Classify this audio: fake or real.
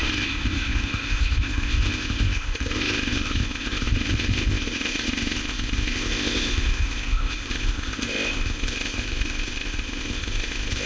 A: fake